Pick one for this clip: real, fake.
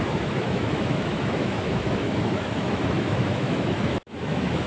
fake